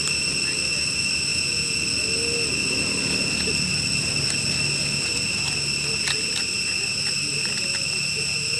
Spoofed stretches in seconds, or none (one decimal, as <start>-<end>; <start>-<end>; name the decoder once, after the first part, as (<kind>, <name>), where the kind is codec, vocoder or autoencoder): 1.3-1.8 (vocoder, Vocos)